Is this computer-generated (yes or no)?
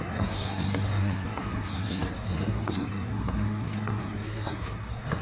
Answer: yes